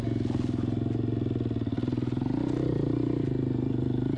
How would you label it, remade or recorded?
recorded